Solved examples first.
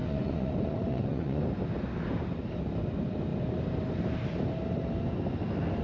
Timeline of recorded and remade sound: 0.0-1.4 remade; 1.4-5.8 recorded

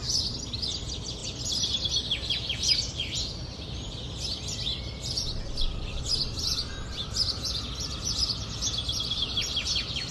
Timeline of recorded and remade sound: 0.0-10.1 recorded

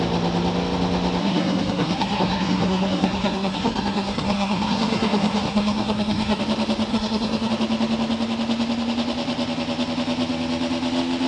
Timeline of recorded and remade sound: 0.0-1.2 recorded; 1.2-6.4 remade; 6.4-6.9 recorded; 6.9-7.5 remade; 7.5-11.3 recorded

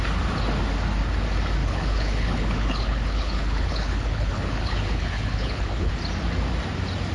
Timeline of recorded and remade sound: 0.0-1.6 recorded; 1.6-5.9 remade; 5.9-7.1 recorded

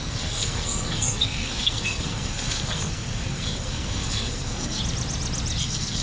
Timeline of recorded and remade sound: 0.0-4.8 remade; 4.8-5.6 recorded; 5.6-6.0 remade

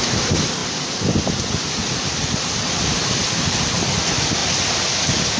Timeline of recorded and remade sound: 0.0-0.6 recorded; 0.6-2.8 remade; 2.8-5.4 recorded

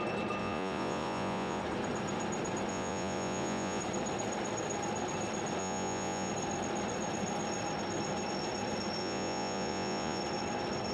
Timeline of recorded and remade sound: 0.0-0.4 recorded; 0.4-1.6 remade; 1.6-2.7 recorded; 2.7-3.8 remade; 3.8-5.6 recorded; 5.6-6.3 remade; 6.3-9.0 recorded; 9.0-10.2 remade; 10.2-10.9 recorded